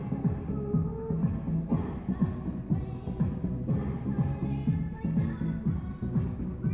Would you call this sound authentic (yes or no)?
yes